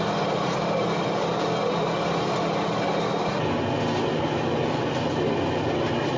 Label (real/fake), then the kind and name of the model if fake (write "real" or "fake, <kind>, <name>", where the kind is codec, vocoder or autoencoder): real